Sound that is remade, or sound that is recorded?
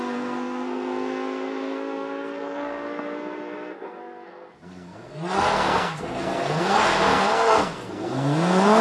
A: remade